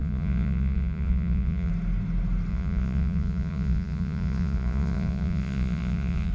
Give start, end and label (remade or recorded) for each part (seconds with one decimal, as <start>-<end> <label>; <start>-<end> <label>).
0.0-1.7 remade; 1.7-2.5 recorded; 2.5-6.3 remade